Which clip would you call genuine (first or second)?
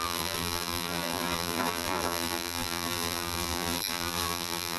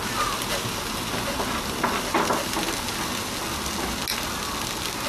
second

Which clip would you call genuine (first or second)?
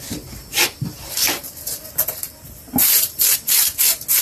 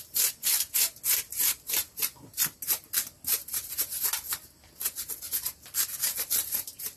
second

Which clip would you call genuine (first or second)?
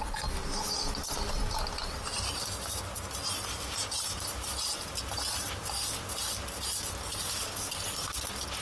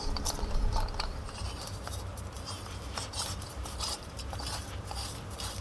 first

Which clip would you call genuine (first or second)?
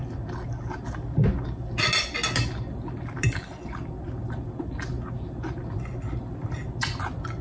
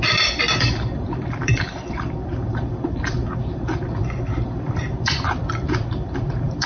first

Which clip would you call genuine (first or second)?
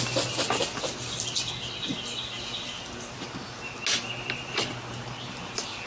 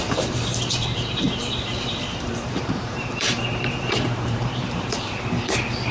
first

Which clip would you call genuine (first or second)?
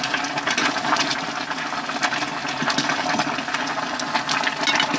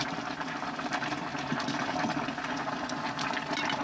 first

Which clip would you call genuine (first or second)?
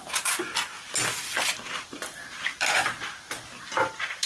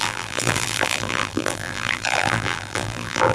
first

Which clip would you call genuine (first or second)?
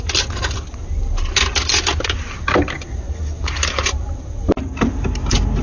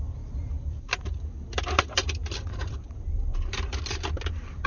first